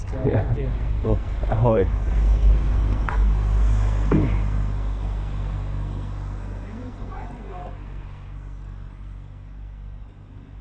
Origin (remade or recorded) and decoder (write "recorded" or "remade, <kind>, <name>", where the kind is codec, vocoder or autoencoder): remade, codec, SNAC